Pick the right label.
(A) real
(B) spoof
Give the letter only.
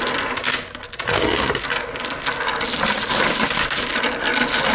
A